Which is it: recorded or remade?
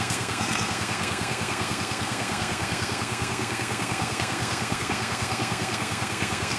remade